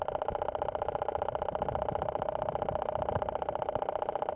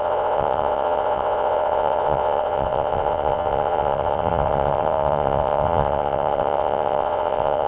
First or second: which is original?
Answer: first